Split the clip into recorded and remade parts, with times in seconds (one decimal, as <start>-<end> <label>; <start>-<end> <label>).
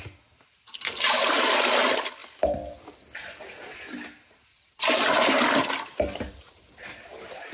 0.0-7.5 recorded